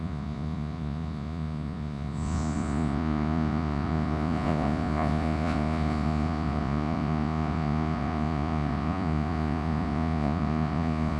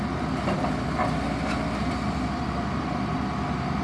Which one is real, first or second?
second